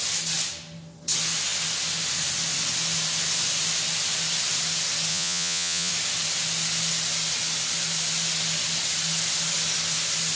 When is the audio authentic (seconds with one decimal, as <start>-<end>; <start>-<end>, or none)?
0.0-5.1; 5.9-10.4